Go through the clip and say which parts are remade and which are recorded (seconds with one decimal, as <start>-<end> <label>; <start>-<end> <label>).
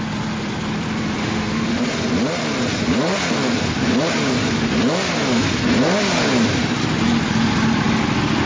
0.0-1.2 recorded; 1.2-1.8 remade; 1.8-8.5 recorded